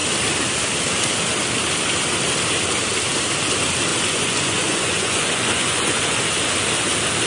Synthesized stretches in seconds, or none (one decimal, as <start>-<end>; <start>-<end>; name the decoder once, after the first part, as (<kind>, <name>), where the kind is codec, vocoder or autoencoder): 3.9-6.2 (vocoder, Vocos)